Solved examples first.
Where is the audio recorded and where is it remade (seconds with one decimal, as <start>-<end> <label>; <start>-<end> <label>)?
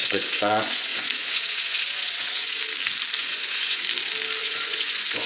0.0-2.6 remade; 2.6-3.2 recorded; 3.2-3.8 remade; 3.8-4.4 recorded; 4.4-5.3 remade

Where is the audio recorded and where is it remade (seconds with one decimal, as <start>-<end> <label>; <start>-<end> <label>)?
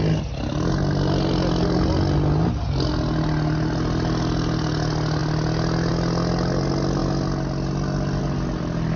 0.0-9.0 recorded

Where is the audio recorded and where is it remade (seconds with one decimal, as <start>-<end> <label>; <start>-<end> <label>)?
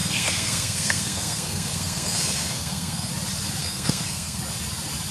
0.0-3.1 remade; 3.1-3.6 recorded; 3.6-4.4 remade; 4.4-5.1 recorded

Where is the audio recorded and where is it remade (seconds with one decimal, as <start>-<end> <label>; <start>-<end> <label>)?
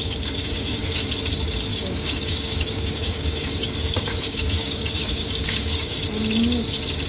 0.0-1.1 remade; 1.1-1.7 recorded; 1.7-6.0 remade; 6.0-7.1 recorded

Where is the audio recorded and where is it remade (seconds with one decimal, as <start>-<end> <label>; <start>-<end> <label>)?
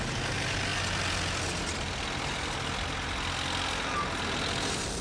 0.0-5.0 recorded